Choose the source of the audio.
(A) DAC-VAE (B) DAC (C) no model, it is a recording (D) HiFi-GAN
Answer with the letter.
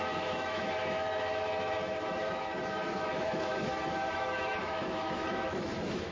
A